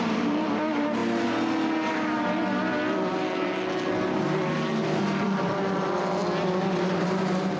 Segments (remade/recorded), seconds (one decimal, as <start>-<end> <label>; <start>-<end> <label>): 0.0-1.0 remade; 1.0-3.1 recorded; 3.1-6.2 remade; 6.2-7.0 recorded; 7.0-7.6 remade